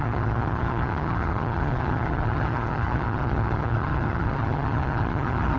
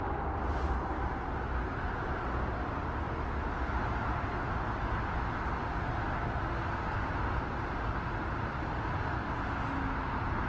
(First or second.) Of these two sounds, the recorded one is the second